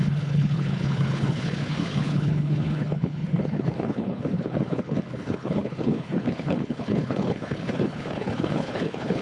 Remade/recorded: remade